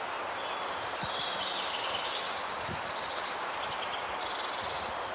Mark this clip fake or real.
real